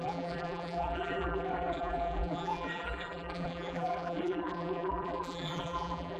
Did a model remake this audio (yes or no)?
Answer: yes